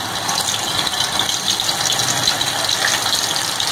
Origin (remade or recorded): recorded